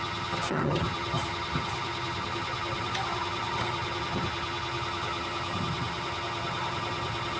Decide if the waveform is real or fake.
fake